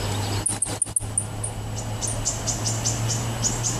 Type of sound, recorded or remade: recorded